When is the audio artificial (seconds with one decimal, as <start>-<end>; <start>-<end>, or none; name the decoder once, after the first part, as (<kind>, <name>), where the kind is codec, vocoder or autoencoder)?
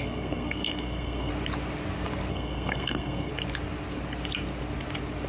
0.0-1.3 (codec, SNAC); 2.3-3.3